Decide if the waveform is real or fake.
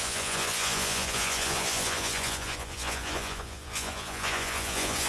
fake